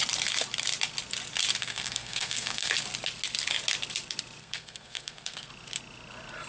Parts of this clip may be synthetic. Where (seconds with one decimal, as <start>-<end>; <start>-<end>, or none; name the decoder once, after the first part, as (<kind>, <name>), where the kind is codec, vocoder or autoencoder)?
1.6-2.7 (codec, SNAC); 4.4-5.5